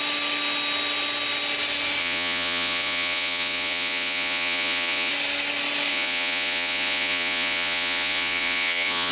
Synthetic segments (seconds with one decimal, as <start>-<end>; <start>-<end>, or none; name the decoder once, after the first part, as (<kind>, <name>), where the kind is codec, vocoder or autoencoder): 2.0-5.1 (vocoder, Vocos); 5.9-9.1